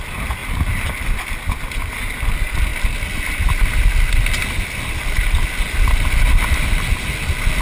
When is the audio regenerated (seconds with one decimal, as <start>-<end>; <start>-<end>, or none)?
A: none